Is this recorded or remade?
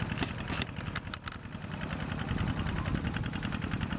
recorded